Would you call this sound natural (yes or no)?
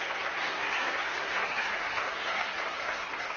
no